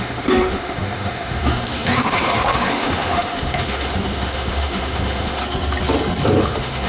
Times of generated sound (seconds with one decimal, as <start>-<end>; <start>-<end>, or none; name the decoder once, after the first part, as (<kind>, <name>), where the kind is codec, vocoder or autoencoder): 0.0-5.4 (autoencoder, DAC-VAE); 6.4-6.9